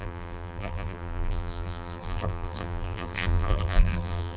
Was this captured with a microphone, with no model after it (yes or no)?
no